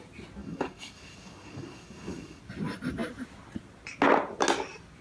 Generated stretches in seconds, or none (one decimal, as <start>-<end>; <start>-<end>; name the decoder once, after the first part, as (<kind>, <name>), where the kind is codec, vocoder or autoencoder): 0.4-2.4 (codec, DAC)